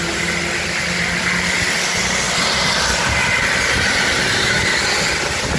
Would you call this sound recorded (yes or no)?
yes